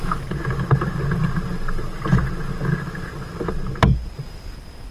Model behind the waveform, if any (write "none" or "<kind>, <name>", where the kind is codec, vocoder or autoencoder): none